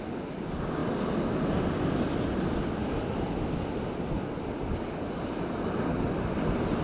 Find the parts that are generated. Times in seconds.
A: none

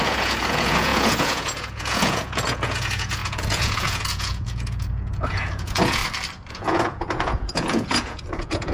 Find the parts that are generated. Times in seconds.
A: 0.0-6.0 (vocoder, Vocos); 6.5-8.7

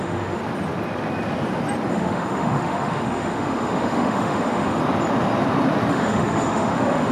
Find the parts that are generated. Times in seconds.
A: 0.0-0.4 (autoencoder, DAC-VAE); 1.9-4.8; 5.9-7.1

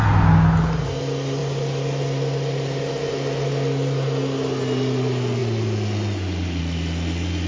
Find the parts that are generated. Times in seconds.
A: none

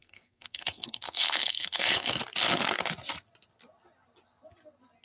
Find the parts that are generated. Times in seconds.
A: 0.0-2.2 (codec, SNAC)

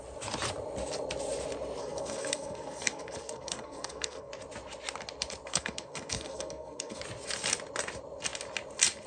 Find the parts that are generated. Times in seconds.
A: 1.8-4.3 (codec, SNAC); 5.5-7.0

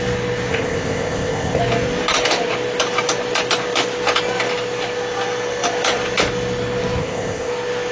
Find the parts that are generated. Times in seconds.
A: 0.5-1.6 (codec, ZipCodec); 7.0-7.5